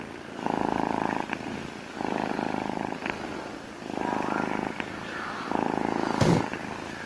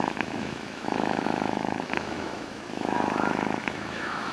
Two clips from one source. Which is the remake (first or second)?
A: second